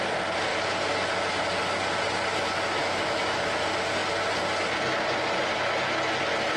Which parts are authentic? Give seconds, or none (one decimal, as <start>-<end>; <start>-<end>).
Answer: 0.0-2.8; 3.6-6.6